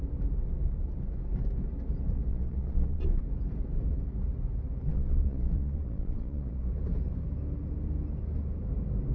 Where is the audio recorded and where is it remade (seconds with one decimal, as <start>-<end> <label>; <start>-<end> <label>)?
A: 0.0-2.3 recorded; 2.3-3.2 remade; 3.2-4.9 recorded; 4.9-6.7 remade; 6.7-9.1 recorded